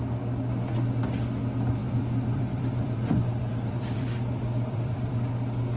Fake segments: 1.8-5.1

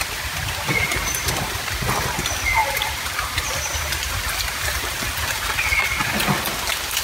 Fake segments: 2.6-4.1

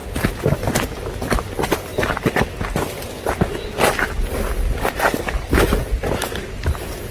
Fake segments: none

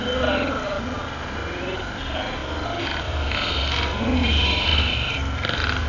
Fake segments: 1.4-2.0